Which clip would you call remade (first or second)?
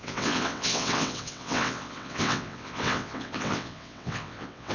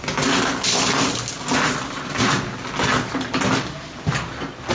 first